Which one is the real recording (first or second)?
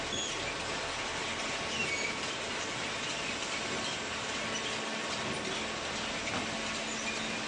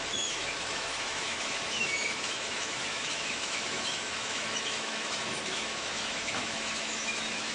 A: first